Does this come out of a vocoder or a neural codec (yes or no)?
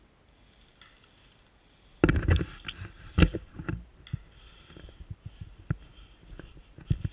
no